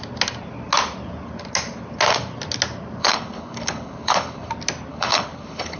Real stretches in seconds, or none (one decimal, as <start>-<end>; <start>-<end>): 0.0-3.0; 4.5-4.9